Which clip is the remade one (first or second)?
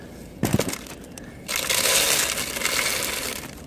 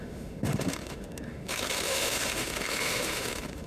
second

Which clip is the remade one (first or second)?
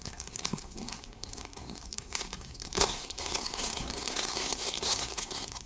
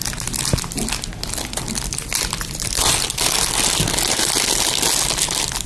first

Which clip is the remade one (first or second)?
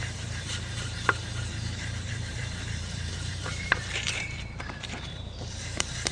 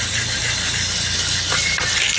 first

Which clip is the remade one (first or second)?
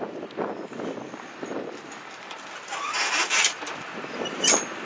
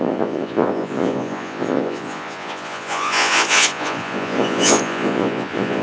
second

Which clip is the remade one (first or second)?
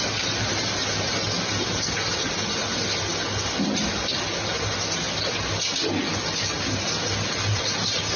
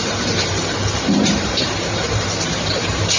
second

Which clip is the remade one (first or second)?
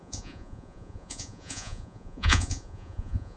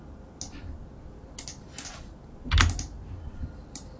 first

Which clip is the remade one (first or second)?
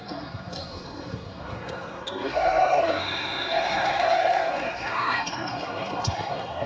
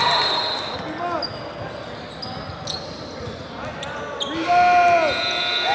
first